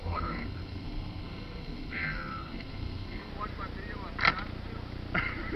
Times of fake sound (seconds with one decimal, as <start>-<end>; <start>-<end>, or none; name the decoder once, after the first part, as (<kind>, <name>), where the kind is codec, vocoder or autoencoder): 0.0-3.3 (codec, SNAC)